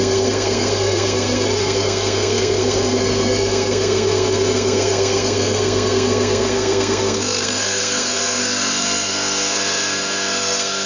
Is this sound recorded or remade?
remade